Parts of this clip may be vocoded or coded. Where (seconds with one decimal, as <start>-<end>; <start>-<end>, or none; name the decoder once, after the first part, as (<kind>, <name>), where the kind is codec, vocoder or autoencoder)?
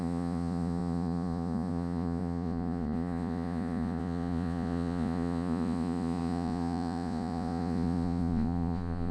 0.0-9.1 (vocoder, Vocos)